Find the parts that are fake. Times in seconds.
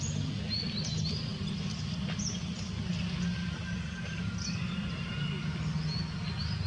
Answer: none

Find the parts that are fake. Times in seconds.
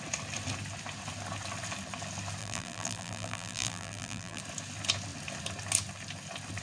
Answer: 2.4-4.4 (vocoder, BigVGAN v2)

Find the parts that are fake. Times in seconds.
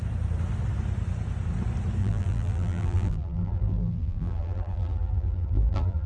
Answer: 2.0-6.1 (vocoder, BigVGAN v2)